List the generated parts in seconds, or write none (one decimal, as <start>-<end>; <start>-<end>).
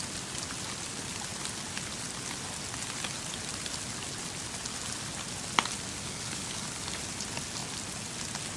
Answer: 5.9-7.0